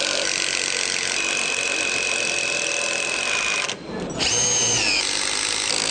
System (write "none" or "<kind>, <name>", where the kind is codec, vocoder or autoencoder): none